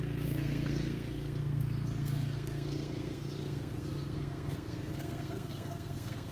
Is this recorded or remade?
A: remade